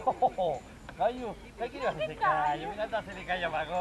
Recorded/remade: remade